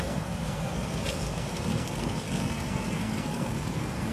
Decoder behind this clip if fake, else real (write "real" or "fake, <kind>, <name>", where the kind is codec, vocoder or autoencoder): fake, codec, SNAC